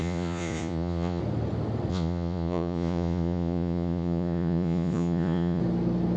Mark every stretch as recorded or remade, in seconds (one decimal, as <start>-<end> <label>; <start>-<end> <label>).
0.0-1.2 remade; 1.2-1.9 recorded; 1.9-5.6 remade; 5.6-6.2 recorded